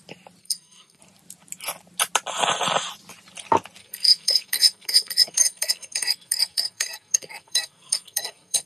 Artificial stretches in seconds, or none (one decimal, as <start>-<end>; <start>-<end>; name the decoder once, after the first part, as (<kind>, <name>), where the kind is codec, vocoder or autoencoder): 0.4-1.0 (codec, SNAC); 3.8-8.7